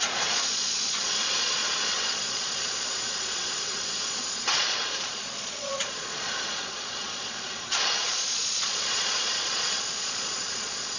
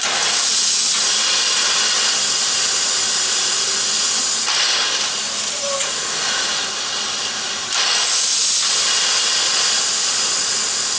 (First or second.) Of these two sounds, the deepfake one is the first